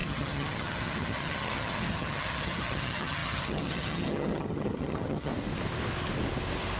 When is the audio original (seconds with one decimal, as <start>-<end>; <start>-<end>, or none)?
5.3-6.8